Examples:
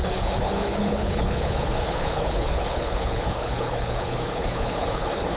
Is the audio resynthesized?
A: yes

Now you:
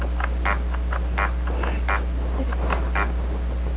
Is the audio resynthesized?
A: no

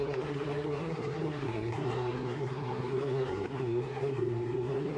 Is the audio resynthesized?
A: yes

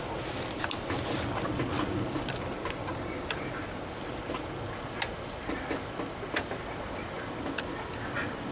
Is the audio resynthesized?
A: no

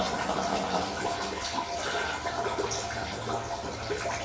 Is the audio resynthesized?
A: no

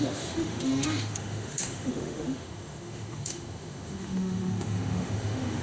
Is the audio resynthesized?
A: yes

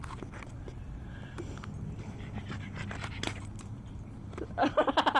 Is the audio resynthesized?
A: no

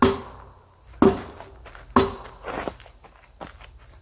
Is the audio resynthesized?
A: no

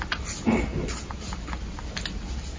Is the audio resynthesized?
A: no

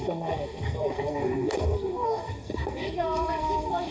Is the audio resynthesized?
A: yes